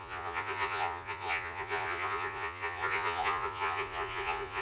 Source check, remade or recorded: remade